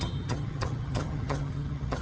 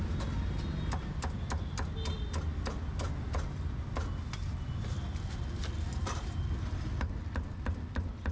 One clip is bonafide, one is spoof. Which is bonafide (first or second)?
second